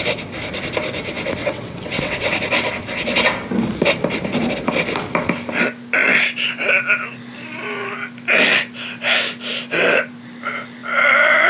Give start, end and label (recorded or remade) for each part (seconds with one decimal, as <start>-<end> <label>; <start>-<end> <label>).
0.0-1.4 recorded; 1.4-2.3 remade; 2.3-11.5 recorded